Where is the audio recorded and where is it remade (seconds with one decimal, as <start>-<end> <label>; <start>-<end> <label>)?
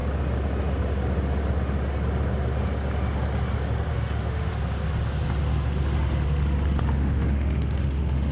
0.0-3.9 recorded; 3.9-4.5 remade; 4.5-6.8 recorded; 6.8-8.3 remade